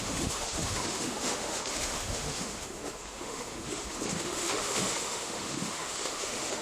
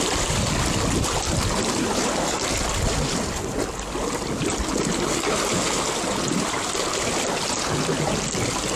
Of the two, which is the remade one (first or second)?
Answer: first